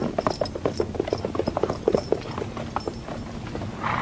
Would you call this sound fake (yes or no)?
no